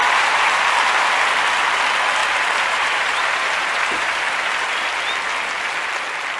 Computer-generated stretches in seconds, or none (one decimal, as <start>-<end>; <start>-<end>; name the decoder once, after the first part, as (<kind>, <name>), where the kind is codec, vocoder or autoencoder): 0.0-1.1 (vocoder, BigVGAN v2); 2.2-4.9